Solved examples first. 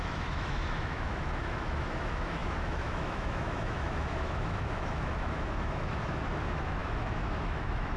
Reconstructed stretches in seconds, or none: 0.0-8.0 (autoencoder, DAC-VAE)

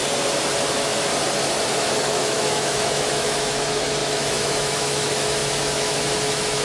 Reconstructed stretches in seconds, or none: 0.7-1.1 (autoencoder, DAC-VAE); 1.7-6.6

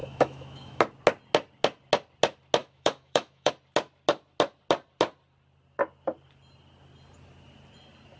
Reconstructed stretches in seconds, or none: 0.0-0.8 (autoencoder, DAC-VAE); 2.6-3.5

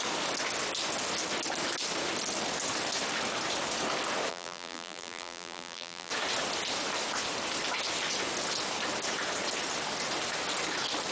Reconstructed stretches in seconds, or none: 4.3-6.1 (vocoder, BigVGAN v2)